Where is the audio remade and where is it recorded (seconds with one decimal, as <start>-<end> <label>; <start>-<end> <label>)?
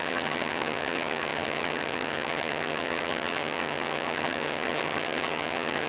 0.0-5.9 remade